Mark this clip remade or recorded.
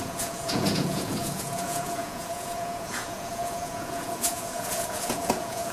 remade